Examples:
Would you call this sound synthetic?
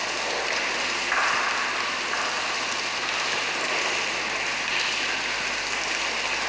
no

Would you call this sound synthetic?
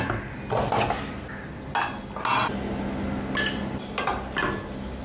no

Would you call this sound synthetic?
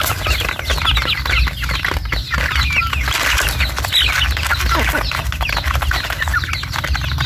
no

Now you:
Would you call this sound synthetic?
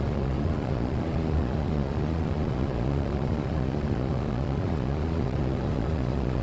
yes